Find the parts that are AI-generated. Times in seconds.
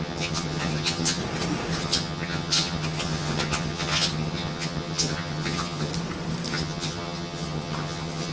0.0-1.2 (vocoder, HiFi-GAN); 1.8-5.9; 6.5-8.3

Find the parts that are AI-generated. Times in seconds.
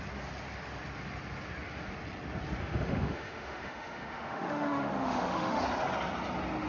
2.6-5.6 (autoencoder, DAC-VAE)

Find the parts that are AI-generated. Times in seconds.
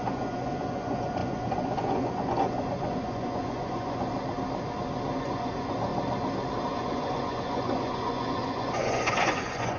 0.0-4.1 (vocoder, Vocos); 5.2-5.9; 6.7-9.8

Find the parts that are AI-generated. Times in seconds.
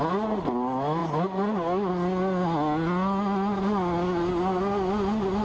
none